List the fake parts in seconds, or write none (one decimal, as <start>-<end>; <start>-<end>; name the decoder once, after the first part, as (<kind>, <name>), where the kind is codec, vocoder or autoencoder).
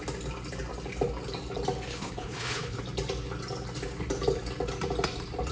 1.9-2.8 (codec, HILCodec)